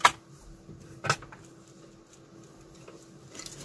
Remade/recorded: recorded